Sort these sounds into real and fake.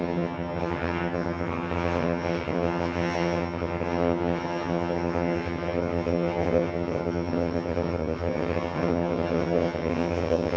fake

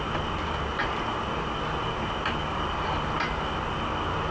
real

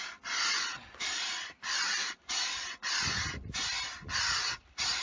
real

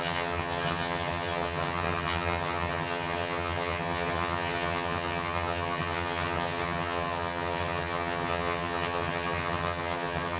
fake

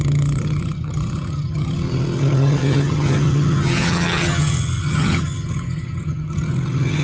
fake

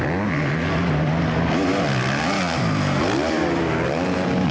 real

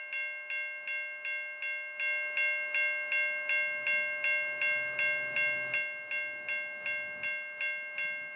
real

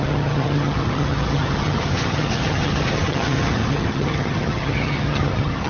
fake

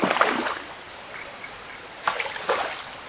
real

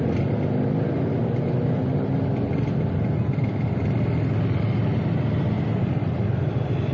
real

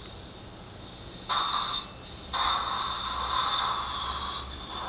real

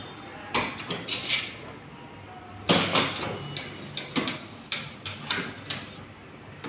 real